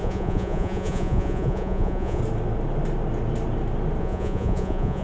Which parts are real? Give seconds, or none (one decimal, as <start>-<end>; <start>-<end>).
2.2-4.0